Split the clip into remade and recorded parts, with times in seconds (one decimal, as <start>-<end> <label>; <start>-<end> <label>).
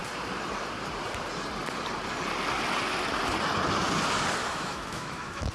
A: 0.0-4.4 recorded; 4.4-5.5 remade